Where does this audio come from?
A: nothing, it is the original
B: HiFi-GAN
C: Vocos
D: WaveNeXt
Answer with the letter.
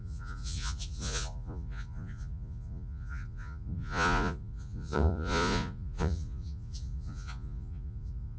C